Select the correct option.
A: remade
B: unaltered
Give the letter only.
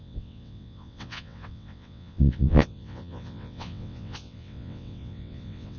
A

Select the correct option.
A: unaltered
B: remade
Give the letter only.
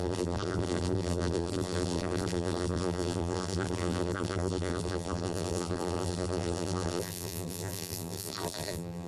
B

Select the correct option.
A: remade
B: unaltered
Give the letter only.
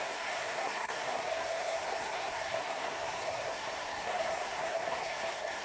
A